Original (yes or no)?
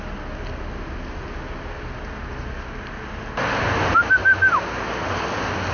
yes